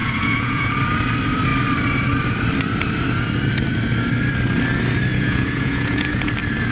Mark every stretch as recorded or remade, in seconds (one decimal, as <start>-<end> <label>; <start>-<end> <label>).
0.0-0.7 remade; 0.7-5.1 recorded; 5.1-6.3 remade; 6.3-6.7 recorded